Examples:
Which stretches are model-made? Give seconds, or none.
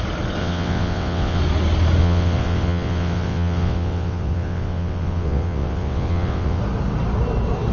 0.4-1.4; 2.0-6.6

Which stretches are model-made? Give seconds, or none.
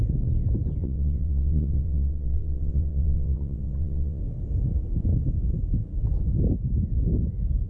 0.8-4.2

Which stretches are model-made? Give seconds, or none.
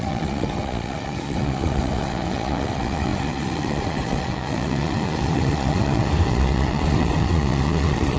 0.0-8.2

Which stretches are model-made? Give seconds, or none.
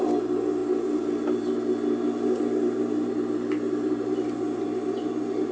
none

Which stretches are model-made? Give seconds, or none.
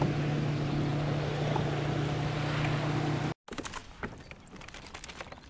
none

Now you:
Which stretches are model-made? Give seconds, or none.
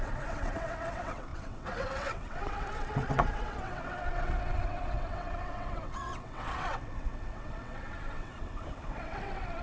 0.0-9.6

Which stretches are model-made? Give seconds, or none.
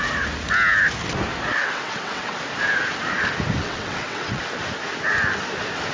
1.6-2.4; 3.6-4.4